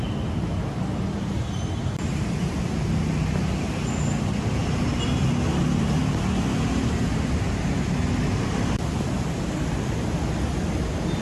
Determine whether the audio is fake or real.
real